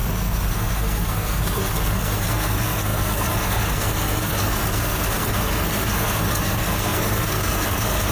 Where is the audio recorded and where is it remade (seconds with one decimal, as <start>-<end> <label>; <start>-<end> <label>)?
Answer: 0.0-8.1 remade